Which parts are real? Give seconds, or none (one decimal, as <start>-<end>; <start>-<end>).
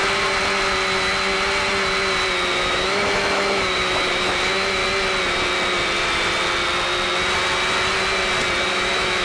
0.0-2.6; 4.8-8.7